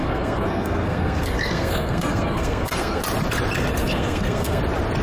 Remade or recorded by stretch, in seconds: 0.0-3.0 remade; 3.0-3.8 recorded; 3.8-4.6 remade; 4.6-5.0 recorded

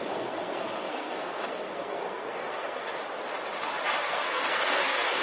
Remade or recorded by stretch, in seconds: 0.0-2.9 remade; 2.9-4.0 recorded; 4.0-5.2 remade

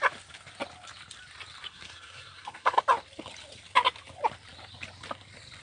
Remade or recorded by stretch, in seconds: 0.0-1.7 recorded; 1.7-2.8 remade; 2.8-5.6 recorded

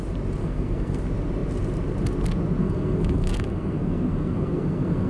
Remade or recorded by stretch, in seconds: 0.0-0.4 recorded; 0.4-1.0 remade; 1.0-2.6 recorded; 2.6-5.1 remade

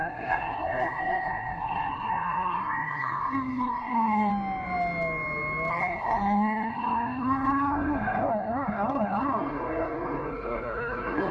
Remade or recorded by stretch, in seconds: 0.0-4.3 remade; 4.3-5.7 recorded; 5.7-11.3 remade

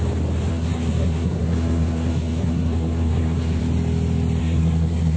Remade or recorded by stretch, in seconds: 0.0-0.5 recorded; 0.5-3.6 remade; 3.6-4.4 recorded; 4.4-5.2 remade

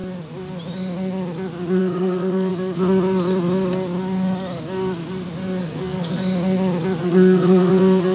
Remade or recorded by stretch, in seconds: 0.0-1.8 recorded; 1.8-2.5 remade; 2.5-5.6 recorded; 5.6-6.2 remade; 6.2-7.0 recorded; 7.0-8.1 remade